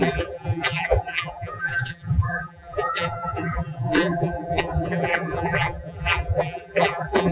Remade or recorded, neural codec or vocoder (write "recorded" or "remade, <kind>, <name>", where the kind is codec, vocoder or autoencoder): remade, vocoder, BigVGAN v2